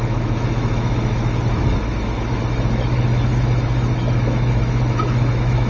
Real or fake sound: fake